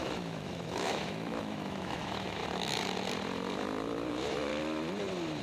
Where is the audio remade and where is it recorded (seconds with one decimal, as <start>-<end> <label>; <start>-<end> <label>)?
0.0-2.4 remade; 2.4-4.1 recorded; 4.1-4.5 remade; 4.5-5.4 recorded